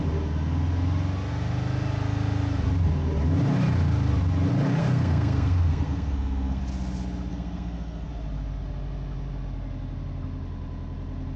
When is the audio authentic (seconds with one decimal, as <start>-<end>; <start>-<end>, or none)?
0.0-4.8; 6.6-7.3; 8.1-11.4